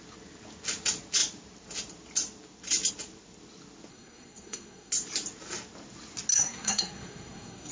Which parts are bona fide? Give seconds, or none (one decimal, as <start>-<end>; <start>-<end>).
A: 0.0-3.9; 4.9-6.3

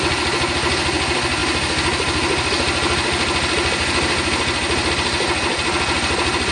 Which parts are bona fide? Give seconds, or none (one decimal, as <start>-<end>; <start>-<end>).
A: 0.0-6.5